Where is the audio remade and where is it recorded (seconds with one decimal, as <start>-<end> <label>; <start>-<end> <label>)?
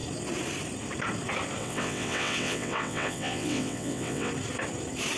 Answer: 0.0-1.6 recorded; 1.6-4.3 remade; 4.3-5.2 recorded